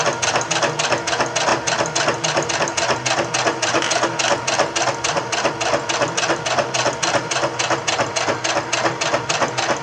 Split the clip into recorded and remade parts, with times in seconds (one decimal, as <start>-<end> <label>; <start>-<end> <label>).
0.0-9.8 recorded